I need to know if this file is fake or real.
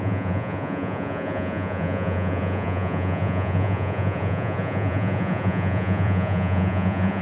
fake